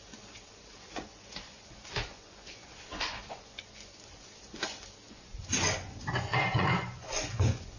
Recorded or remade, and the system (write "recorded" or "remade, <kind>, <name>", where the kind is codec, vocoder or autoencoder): remade, vocoder, Vocos